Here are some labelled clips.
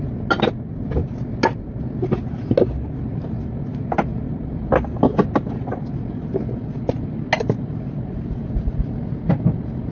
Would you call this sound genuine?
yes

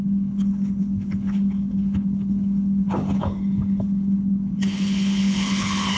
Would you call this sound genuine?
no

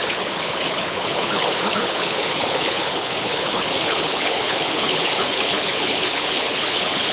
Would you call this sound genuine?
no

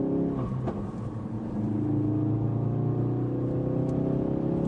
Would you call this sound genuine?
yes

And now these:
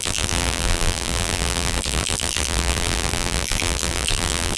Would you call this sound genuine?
no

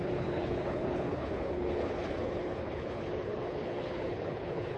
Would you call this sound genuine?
no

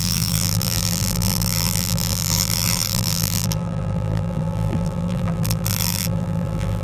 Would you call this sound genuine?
no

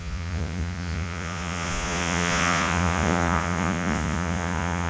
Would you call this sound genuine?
no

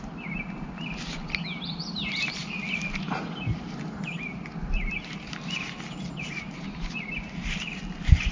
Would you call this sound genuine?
yes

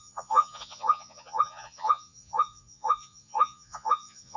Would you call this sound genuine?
no